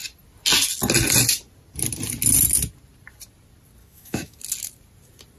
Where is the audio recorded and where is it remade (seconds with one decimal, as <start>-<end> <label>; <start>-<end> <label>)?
0.0-3.8 recorded; 3.8-4.4 remade; 4.4-5.4 recorded